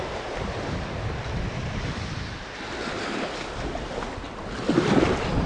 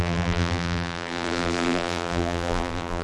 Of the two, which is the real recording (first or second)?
first